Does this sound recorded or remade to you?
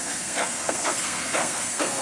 remade